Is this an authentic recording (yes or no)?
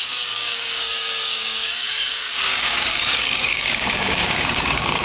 no